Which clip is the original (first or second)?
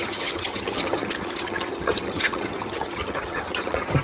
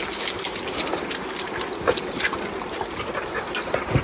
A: second